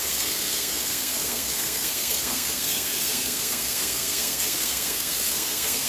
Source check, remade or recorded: remade